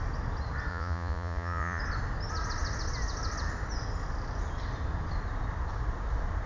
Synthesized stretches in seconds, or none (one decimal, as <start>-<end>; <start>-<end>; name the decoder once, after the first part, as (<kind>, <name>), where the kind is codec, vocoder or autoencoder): 0.7-1.8 (vocoder, Vocos)